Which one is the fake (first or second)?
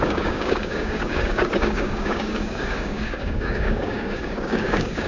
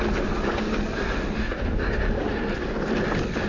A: first